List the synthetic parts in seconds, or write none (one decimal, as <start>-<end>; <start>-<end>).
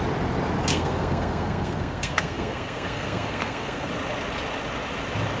0.7-3.9